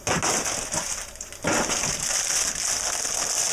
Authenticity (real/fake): real